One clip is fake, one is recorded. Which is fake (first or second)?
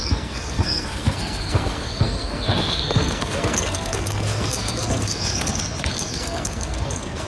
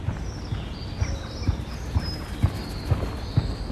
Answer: first